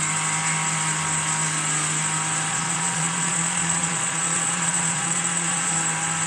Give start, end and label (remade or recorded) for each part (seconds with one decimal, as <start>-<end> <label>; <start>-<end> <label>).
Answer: 0.0-2.5 recorded; 2.5-5.7 remade; 5.7-6.3 recorded